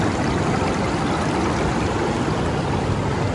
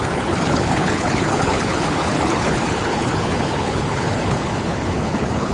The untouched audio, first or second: first